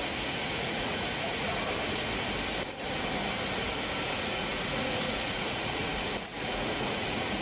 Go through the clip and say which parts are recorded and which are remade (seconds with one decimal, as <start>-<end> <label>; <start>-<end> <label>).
0.0-1.5 remade; 1.5-4.2 recorded; 4.2-7.4 remade